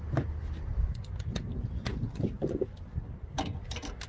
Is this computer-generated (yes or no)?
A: no